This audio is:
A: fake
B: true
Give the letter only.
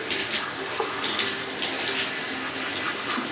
B